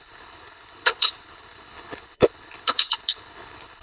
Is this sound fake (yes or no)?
yes